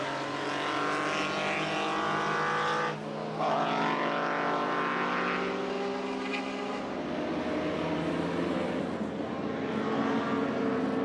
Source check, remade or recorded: recorded